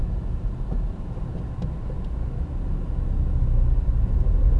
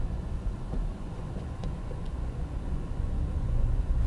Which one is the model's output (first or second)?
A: second